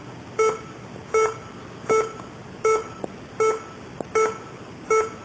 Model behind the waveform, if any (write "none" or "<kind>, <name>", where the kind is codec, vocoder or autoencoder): none